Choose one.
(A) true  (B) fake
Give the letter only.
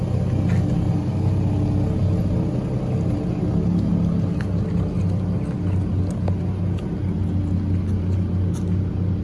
A